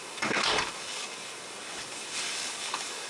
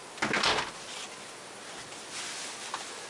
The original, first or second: second